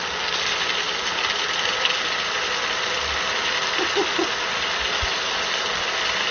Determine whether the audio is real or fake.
real